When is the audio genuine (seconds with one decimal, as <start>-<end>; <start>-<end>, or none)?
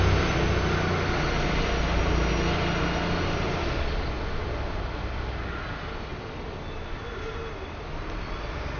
0.0-8.8